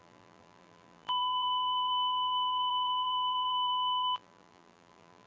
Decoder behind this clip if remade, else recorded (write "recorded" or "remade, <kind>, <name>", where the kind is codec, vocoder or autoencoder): remade, vocoder, BigVGAN v2